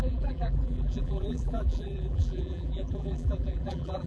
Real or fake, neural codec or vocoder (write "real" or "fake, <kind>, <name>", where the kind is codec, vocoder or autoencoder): fake, vocoder, BigVGAN v2